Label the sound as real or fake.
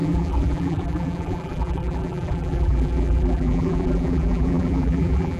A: fake